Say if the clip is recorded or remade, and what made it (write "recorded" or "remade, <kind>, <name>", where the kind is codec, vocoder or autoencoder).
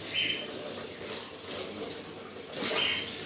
recorded